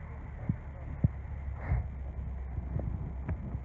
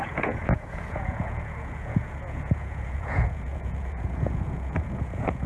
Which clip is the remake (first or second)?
second